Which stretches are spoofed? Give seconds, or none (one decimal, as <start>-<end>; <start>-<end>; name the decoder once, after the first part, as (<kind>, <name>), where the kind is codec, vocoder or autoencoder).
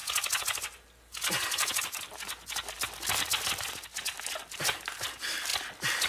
none